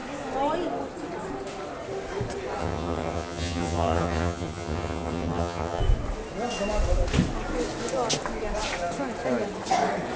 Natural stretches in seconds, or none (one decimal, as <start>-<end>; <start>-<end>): 0.0-2.6; 5.8-10.2